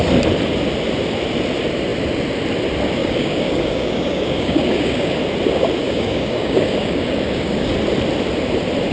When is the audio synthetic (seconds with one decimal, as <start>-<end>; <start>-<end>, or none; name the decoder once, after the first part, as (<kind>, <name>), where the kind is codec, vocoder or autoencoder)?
3.0-5.2 (codec, DAC); 5.8-7.7